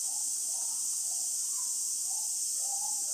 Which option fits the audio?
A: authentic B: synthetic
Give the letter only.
A